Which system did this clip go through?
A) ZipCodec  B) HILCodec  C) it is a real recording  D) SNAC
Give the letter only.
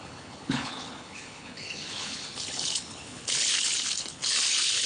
B